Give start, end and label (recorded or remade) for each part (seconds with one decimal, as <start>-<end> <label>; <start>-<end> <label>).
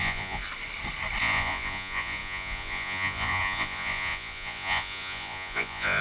0.0-0.4 remade; 0.4-1.2 recorded; 1.2-6.0 remade